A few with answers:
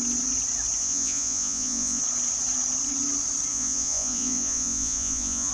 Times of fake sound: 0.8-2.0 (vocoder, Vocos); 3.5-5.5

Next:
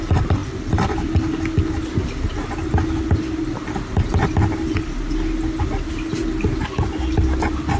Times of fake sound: none

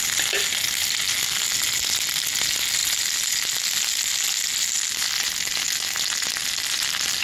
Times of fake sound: none

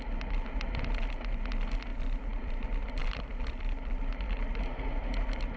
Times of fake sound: 1.9-2.5 (vocoder, BigVGAN v2); 3.0-4.4

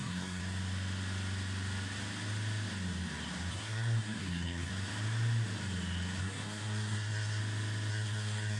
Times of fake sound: 0.0-0.4 (codec, SNAC); 3.5-4.7; 6.2-7.4; 7.9-8.6